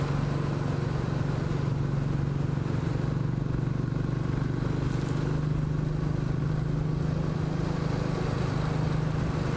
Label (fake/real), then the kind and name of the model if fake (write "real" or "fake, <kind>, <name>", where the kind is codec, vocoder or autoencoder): real